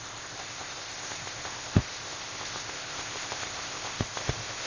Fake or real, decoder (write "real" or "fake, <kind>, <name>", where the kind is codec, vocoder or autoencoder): fake, codec, ZipCodec